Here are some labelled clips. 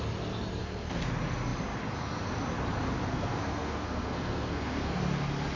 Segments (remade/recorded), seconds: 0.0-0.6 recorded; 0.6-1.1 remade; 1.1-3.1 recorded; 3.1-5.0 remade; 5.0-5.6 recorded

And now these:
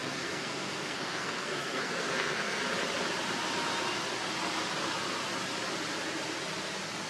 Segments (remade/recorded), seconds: 0.0-2.6 remade; 2.6-7.1 recorded

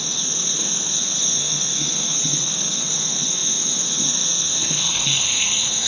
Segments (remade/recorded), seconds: 0.0-5.9 remade

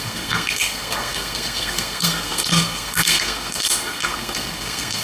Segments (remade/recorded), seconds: 0.0-5.0 remade

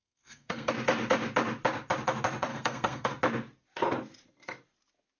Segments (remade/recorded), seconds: 0.0-0.7 remade; 0.7-2.5 recorded; 2.5-3.1 remade; 3.1-5.2 recorded